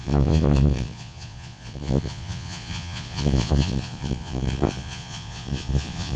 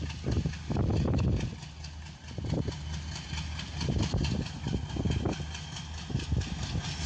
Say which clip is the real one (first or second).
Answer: second